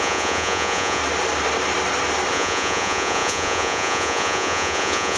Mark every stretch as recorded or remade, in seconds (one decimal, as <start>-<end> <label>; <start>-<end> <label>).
0.0-1.0 remade; 1.0-2.3 recorded; 2.3-5.2 remade